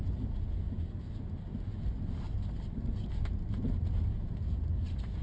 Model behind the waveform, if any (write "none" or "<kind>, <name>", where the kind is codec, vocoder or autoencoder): none